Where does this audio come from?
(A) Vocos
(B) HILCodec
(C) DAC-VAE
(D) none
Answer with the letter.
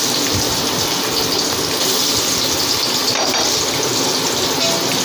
D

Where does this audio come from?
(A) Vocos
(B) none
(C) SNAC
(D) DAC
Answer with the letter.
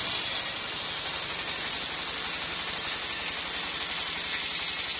B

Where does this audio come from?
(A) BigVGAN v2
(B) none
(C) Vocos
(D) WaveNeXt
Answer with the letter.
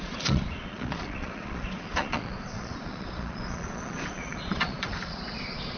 C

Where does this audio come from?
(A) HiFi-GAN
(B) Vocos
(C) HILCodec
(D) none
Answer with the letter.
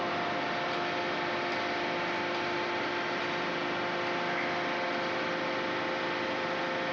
D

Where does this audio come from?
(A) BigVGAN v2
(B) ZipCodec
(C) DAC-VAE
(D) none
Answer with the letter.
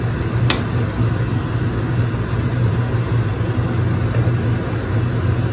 D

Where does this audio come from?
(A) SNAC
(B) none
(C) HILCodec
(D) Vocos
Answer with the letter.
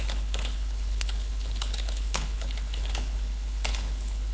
C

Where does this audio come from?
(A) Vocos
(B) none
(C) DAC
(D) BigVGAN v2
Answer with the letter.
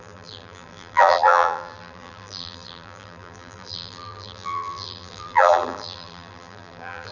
D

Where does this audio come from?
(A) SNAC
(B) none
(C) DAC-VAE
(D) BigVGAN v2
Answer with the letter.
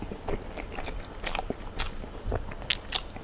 B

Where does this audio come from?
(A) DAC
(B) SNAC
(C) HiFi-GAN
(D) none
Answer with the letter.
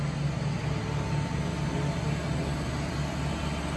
D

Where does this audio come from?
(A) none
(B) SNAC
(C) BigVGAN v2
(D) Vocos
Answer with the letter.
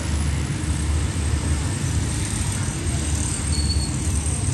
A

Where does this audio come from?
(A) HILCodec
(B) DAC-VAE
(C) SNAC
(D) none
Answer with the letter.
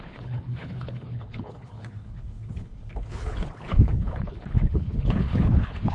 A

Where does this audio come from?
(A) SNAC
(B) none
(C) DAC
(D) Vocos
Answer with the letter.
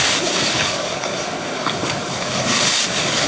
C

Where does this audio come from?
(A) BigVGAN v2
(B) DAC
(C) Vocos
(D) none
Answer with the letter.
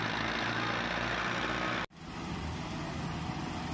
D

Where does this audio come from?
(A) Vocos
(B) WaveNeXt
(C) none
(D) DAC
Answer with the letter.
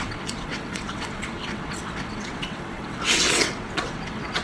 B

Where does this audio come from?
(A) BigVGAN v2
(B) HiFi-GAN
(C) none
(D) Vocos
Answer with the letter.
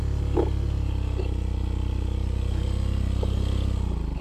C